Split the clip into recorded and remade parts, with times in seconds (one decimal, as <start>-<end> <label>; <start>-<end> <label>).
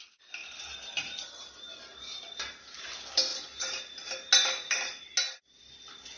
0.0-0.4 recorded; 0.4-1.3 remade; 1.3-6.2 recorded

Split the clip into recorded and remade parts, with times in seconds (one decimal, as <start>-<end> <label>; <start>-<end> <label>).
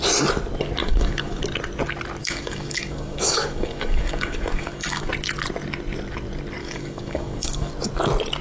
0.0-0.8 recorded; 0.8-1.4 remade; 1.4-2.2 recorded; 2.2-5.1 remade; 5.1-6.6 recorded; 6.6-7.7 remade; 7.7-8.4 recorded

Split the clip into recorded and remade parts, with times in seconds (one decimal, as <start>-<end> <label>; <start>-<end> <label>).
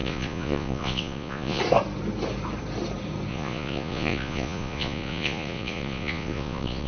0.0-1.6 remade; 1.6-3.3 recorded; 3.3-6.9 remade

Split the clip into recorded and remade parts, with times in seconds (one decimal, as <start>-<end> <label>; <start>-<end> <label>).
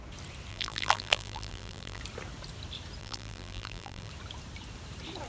0.0-0.5 recorded; 0.5-2.0 remade; 2.0-3.0 recorded; 3.0-4.1 remade; 4.1-5.3 recorded